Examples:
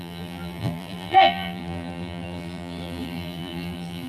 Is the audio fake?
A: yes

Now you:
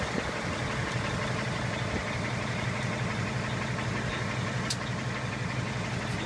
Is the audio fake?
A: no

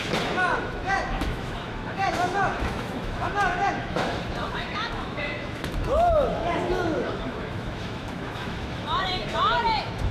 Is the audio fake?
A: yes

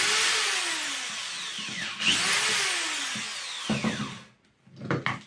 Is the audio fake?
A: no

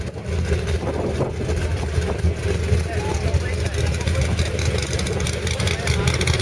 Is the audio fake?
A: no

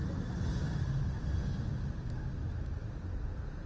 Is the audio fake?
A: no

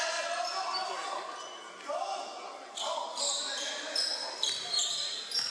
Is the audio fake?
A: no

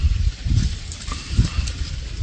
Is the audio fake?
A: no